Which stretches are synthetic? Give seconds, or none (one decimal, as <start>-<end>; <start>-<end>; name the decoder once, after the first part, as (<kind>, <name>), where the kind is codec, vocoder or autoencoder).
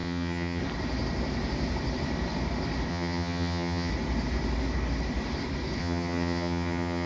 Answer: 0.0-0.6 (vocoder, HiFi-GAN); 2.9-3.9; 5.8-7.1